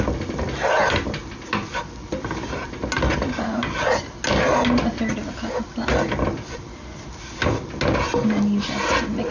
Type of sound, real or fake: real